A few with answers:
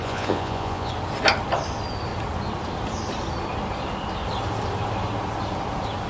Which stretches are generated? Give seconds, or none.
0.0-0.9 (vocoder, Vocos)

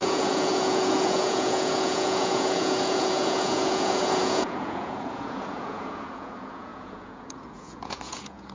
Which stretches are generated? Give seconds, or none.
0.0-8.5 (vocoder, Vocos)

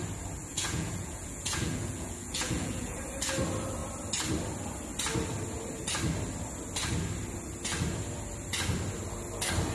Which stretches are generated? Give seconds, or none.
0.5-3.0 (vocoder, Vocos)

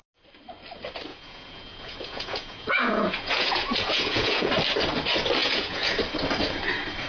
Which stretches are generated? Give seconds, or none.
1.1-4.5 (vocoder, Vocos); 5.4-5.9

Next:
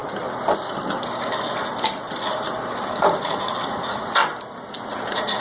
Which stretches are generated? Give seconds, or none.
3.2-4.2 (vocoder, Vocos); 4.8-5.4

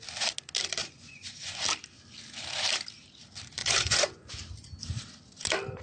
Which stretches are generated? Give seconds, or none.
0.8-1.6 (vocoder, Vocos); 3.6-4.3

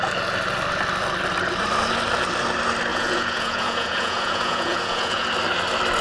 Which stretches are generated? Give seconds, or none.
2.9-5.3 (vocoder, Vocos)

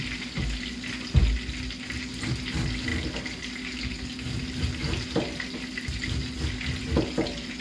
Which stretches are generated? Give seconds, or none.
none